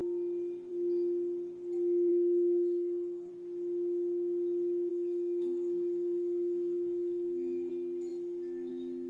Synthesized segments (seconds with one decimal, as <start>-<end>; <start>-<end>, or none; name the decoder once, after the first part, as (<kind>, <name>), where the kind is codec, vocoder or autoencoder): 2.1-3.3 (codec, SNAC); 4.9-7.7